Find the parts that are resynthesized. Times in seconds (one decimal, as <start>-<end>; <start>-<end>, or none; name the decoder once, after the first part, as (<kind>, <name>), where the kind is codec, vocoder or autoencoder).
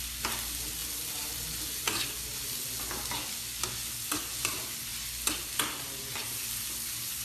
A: none